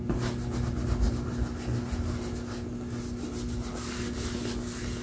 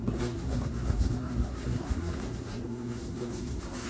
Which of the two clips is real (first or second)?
first